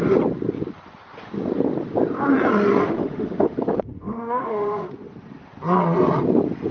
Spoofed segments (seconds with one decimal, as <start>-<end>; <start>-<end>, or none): 2.8-4.9